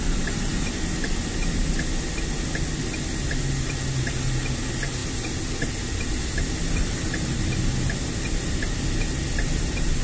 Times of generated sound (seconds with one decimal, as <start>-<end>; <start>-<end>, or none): none